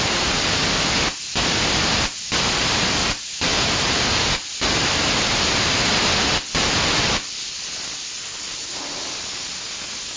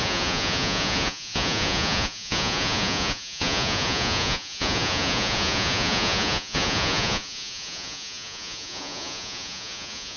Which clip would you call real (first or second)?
first